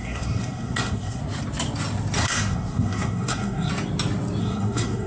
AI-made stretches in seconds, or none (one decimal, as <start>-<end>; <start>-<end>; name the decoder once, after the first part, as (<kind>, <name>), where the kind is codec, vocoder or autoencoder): 0.0-1.2 (codec, SNAC); 2.2-3.7; 4.4-5.1